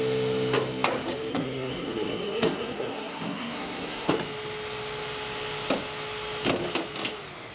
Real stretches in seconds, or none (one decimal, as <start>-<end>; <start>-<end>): 0.0-1.3; 4.1-7.5